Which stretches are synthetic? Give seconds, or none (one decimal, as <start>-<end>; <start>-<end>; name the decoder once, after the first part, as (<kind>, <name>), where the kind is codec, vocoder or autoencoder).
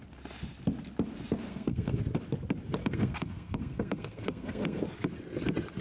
1.5-2.0 (codec, SNAC); 2.8-4.8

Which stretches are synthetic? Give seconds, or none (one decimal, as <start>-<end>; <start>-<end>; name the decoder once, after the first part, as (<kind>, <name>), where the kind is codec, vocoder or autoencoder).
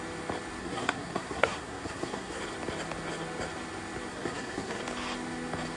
0.6-2.4 (codec, SNAC); 4.1-4.8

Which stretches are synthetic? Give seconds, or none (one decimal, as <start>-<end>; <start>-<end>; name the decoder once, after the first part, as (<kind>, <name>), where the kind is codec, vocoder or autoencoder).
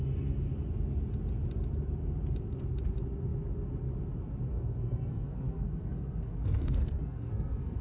4.5-7.8 (codec, SNAC)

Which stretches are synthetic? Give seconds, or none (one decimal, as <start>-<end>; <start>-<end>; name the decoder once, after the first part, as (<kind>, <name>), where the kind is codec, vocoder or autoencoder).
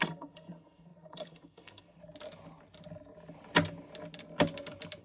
0.0-2.0 (codec, SNAC)